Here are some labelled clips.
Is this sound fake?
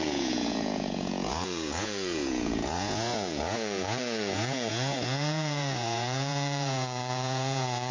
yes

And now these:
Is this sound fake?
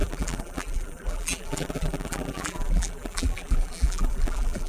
yes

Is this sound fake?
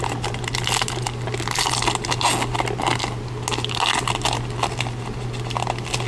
no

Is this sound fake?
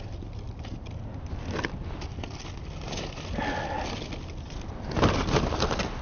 no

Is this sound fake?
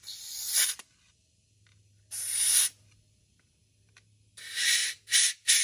no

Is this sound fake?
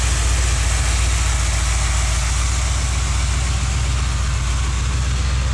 no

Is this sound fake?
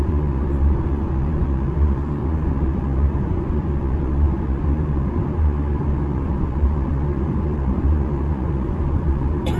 yes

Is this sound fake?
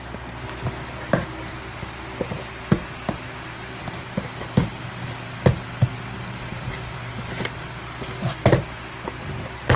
no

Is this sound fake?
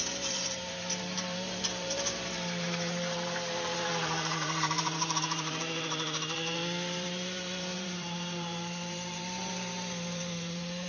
yes